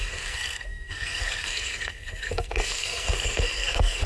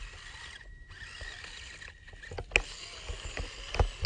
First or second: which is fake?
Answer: first